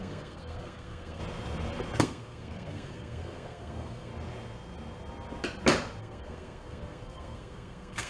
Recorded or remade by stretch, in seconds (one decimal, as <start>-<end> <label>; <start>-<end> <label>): 0.0-1.2 remade; 1.2-2.0 recorded; 2.0-4.1 remade; 4.1-6.0 recorded; 6.0-8.1 remade